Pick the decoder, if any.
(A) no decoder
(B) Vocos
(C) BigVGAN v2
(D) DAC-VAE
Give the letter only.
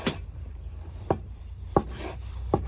C